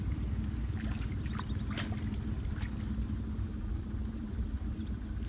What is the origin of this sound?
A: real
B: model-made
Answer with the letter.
A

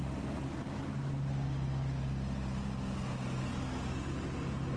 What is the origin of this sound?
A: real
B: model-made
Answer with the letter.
A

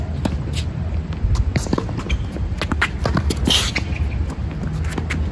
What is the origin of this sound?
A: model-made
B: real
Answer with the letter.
B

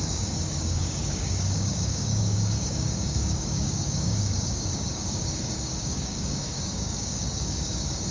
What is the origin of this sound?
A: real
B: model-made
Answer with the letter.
B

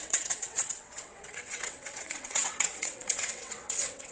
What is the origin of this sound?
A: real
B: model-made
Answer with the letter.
B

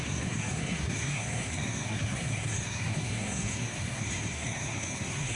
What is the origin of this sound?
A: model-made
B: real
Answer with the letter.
A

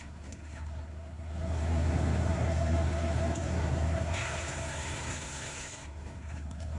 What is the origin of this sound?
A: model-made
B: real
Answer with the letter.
A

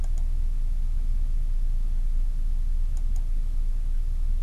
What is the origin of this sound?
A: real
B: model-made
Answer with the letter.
A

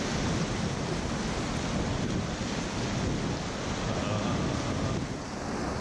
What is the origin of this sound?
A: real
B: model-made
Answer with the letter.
A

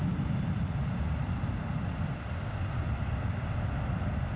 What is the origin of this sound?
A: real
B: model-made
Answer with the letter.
A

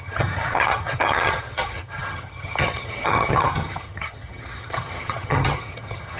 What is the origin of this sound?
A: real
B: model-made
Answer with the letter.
B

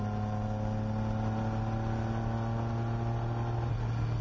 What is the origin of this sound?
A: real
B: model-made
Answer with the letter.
A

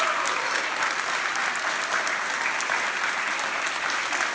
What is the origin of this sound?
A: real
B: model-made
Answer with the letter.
A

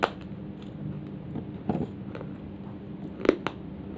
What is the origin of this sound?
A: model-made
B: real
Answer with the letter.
B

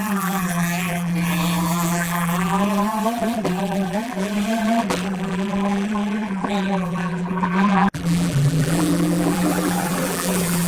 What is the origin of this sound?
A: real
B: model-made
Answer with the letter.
B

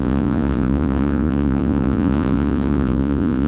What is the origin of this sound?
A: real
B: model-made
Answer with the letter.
B